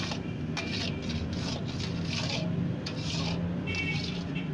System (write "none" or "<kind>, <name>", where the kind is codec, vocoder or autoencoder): none